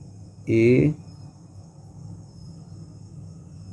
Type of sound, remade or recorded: recorded